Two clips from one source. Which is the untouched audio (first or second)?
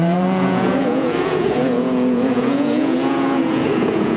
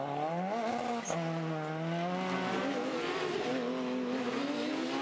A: second